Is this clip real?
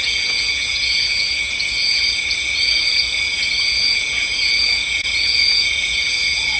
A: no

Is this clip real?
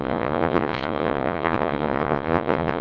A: no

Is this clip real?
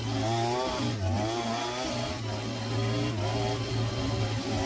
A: yes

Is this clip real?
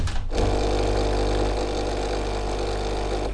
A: yes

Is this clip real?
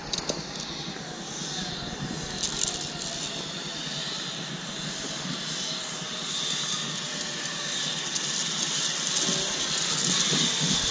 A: yes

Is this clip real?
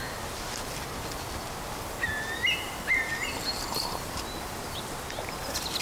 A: yes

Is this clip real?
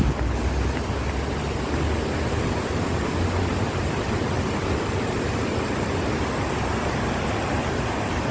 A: yes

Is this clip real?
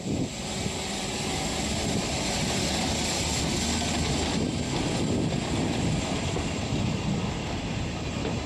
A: yes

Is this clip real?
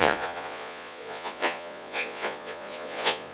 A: no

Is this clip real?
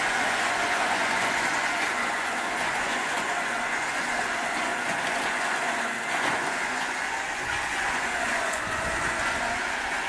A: no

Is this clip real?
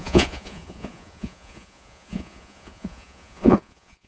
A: no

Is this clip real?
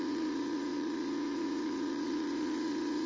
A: no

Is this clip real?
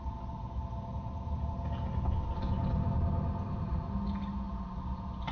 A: yes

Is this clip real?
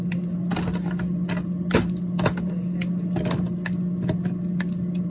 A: yes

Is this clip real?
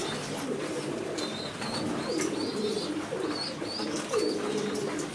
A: yes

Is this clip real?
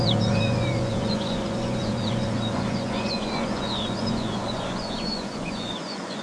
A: no